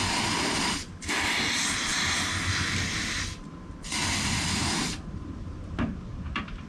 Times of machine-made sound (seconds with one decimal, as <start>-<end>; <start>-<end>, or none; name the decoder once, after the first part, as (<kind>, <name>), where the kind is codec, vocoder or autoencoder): none